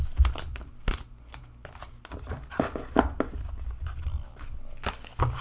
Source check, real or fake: real